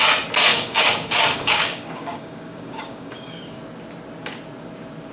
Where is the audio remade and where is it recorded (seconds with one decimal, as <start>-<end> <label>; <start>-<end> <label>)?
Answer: 0.0-0.5 recorded; 0.5-3.6 remade; 3.6-5.1 recorded